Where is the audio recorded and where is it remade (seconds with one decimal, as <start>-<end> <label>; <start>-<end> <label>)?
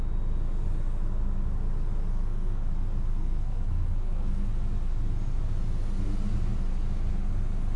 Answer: 0.0-2.1 recorded; 2.1-2.7 remade; 2.7-3.1 recorded; 3.1-4.3 remade; 4.3-7.8 recorded